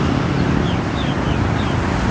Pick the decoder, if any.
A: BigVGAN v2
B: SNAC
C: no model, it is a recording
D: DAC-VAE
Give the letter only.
C